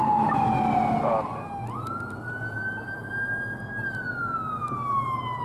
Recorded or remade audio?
recorded